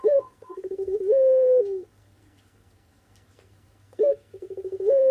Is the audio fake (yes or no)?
yes